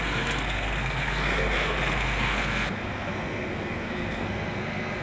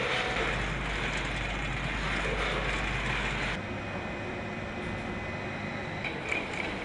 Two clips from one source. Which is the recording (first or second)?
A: second